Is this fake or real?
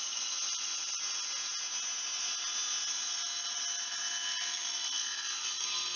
real